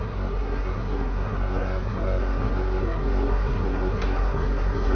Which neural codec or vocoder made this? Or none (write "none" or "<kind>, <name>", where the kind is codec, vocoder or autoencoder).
codec, SNAC